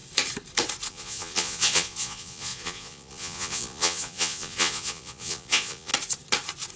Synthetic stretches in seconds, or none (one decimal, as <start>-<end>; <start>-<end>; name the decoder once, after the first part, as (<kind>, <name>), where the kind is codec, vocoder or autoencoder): 0.9-5.9 (vocoder, Vocos)